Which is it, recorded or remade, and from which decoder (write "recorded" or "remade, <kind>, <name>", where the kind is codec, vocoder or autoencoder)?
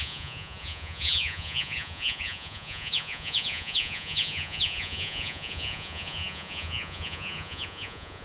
remade, vocoder, Vocos